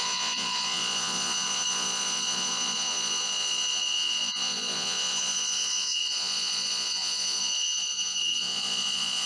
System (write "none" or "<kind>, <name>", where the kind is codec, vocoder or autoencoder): vocoder, Vocos